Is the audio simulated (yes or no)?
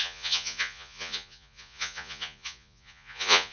yes